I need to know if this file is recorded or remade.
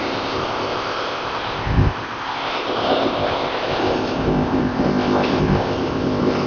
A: remade